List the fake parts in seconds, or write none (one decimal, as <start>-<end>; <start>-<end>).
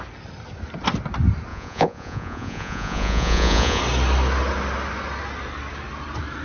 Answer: 1.5-3.8